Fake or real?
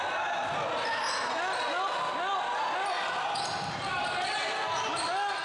real